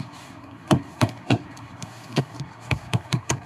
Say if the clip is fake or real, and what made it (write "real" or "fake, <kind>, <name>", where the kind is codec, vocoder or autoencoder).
fake, codec, SNAC